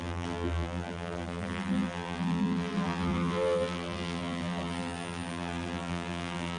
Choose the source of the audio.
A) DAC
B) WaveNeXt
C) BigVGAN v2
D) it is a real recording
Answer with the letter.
C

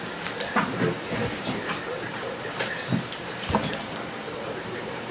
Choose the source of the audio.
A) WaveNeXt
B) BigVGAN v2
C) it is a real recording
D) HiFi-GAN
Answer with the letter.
B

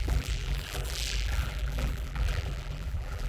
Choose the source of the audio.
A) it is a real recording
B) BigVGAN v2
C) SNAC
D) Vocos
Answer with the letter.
B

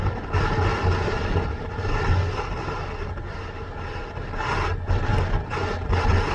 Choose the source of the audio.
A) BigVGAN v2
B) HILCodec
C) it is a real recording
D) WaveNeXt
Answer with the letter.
C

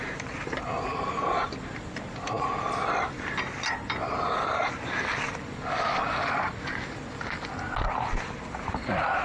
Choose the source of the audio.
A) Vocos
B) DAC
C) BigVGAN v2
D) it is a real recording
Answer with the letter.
D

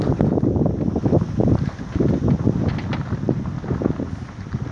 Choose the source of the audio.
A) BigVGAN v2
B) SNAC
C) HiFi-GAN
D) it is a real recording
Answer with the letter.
D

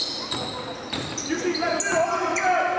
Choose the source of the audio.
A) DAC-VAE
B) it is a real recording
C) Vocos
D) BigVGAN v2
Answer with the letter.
B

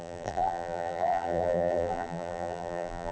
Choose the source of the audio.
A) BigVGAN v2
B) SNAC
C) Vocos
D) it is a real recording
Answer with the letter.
A